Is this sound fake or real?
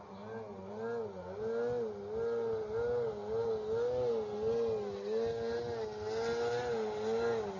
real